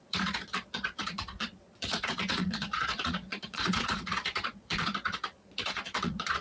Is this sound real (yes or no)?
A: no